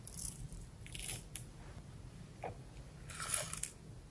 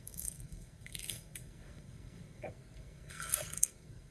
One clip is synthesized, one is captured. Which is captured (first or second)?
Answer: first